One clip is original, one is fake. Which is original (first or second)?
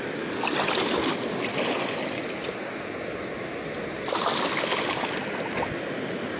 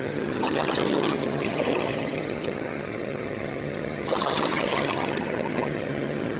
first